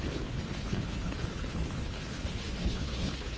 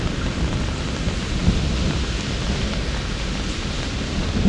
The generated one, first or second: first